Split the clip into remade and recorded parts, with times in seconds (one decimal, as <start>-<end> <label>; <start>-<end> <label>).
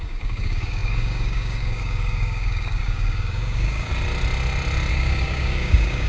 0.0-3.9 remade; 3.9-4.9 recorded; 4.9-6.1 remade